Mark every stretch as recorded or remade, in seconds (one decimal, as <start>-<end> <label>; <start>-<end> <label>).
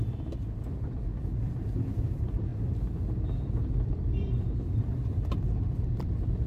0.0-2.5 remade; 2.5-3.4 recorded; 3.4-6.5 remade